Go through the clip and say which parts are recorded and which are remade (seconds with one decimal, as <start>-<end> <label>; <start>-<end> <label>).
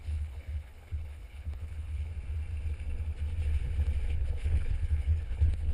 0.0-2.1 remade; 2.1-4.1 recorded; 4.1-5.7 remade